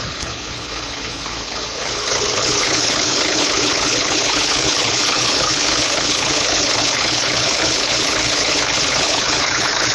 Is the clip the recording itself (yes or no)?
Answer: no